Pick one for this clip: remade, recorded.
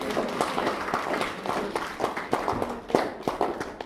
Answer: recorded